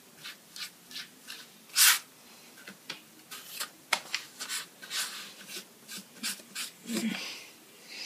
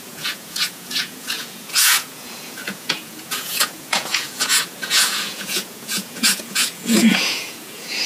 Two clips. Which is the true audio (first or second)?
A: first